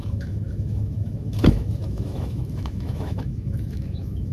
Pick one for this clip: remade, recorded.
remade